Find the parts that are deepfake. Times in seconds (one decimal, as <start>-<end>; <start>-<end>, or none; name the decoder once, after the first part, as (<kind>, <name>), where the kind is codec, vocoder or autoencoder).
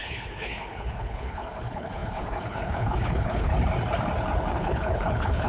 0.0-3.5 (codec, HILCodec); 4.5-5.5